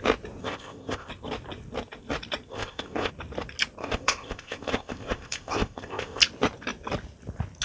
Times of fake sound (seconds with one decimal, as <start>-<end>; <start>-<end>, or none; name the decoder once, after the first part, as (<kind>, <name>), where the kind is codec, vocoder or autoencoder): 0.4-1.1 (codec, ZipCodec); 2.5-3.1; 3.8-6.2